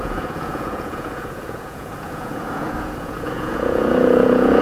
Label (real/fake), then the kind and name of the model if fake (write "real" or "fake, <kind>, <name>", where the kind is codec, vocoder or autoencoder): fake, vocoder, Vocos